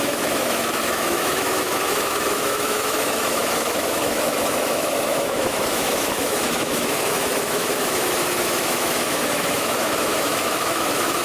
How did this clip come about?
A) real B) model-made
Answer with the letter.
B